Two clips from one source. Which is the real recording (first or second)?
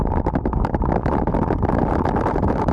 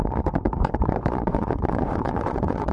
first